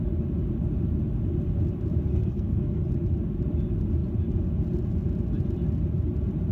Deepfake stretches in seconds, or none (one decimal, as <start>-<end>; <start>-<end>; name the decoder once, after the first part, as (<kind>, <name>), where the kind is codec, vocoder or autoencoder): 2.1-2.8 (codec, SNAC)